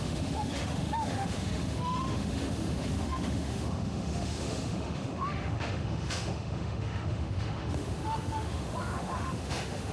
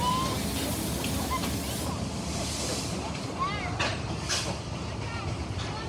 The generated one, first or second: first